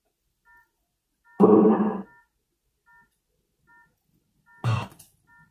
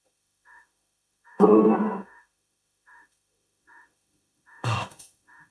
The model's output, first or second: second